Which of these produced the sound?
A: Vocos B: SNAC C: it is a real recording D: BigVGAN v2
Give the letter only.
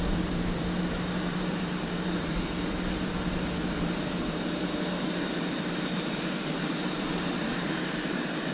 D